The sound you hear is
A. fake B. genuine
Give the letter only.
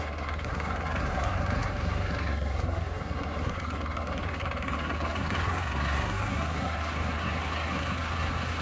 A